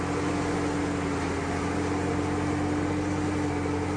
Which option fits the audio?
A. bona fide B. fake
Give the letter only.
A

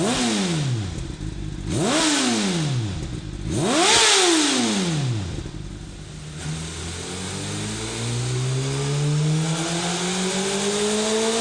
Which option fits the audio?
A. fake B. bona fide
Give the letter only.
B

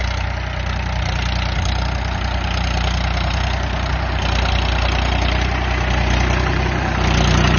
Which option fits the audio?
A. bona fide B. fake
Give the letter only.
A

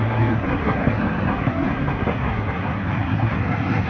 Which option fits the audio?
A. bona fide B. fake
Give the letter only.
B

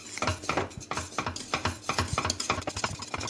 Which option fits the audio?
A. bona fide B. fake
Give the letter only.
A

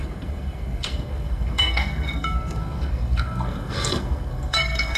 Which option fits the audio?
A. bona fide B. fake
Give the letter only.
B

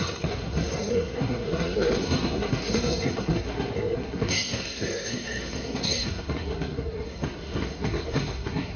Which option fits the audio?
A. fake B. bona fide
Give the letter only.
A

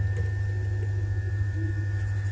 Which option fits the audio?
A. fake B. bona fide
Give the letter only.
B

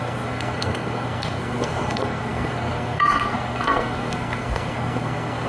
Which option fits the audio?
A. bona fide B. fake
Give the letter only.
B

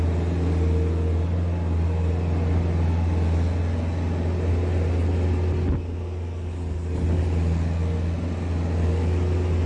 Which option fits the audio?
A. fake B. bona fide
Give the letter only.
B